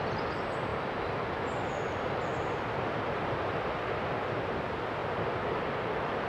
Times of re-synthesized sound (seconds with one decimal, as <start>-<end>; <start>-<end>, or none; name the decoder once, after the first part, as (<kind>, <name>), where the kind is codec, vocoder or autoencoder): none